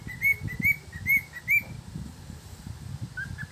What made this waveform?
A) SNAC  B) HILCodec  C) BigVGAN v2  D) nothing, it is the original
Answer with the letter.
D